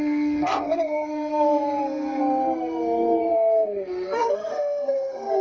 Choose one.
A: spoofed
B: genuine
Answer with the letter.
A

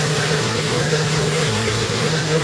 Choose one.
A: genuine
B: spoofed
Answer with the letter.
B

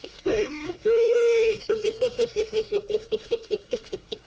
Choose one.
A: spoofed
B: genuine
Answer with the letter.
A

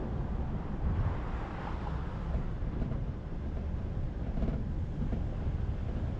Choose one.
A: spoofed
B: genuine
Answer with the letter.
B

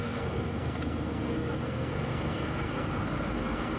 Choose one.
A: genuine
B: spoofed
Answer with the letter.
B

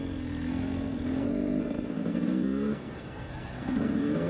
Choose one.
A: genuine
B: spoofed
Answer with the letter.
B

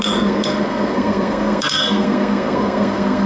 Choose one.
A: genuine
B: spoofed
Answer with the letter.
B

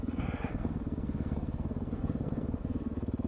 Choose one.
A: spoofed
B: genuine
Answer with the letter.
A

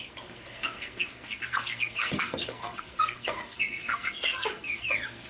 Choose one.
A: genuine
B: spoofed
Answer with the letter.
B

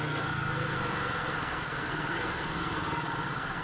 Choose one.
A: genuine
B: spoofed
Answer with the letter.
B